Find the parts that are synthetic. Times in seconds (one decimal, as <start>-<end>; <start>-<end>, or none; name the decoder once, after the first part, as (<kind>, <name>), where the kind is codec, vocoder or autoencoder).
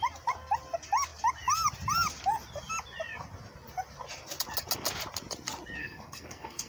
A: 5.8-6.7 (codec, SNAC)